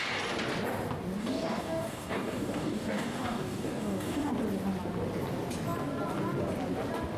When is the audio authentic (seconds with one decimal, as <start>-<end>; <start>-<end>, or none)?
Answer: 0.0-1.2; 4.3-7.2